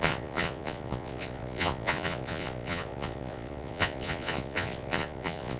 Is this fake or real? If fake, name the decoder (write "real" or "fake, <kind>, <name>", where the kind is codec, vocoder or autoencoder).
fake, vocoder, Vocos